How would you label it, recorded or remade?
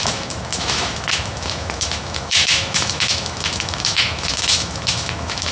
remade